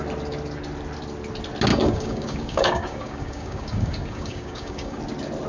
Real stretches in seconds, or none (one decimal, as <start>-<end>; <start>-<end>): 0.0-1.7; 5.0-5.5